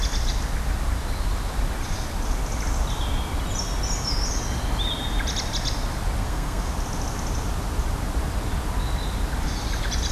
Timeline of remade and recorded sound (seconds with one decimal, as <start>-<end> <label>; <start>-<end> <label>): 0.0-6.2 recorded; 6.2-6.7 remade; 6.7-10.1 recorded